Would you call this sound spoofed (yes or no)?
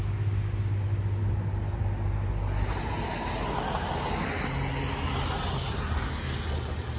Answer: no